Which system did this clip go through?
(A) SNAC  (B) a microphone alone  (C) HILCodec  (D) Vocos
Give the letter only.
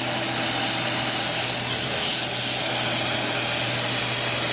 B